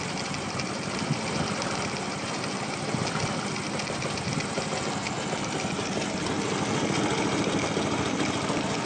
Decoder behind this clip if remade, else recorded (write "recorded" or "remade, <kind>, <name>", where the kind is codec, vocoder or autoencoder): remade, vocoder, BigVGAN v2